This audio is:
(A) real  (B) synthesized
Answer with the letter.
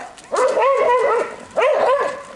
A